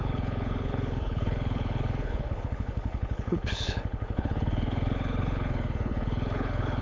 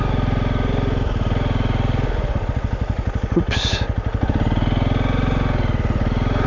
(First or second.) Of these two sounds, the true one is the second